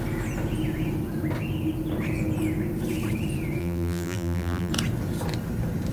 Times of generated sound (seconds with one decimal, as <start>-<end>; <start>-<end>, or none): 3.6-4.7